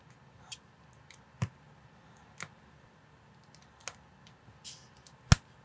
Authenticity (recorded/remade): recorded